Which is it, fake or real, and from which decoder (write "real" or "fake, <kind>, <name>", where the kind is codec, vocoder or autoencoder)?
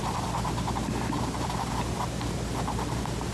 real